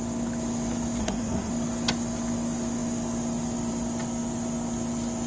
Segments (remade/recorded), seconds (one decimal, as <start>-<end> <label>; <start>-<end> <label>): 0.0-1.0 recorded; 1.0-1.5 remade; 1.5-5.3 recorded